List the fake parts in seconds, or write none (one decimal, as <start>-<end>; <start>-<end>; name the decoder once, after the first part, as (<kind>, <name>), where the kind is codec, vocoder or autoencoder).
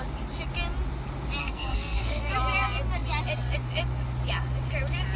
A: 1.4-2.3 (codec, SNAC)